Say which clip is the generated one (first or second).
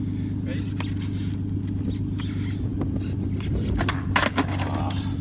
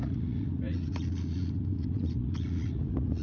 second